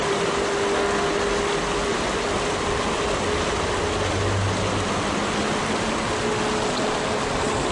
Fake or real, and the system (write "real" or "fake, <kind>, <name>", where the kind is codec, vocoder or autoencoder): real